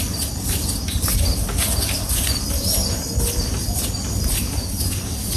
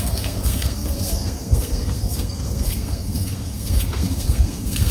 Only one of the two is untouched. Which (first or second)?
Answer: first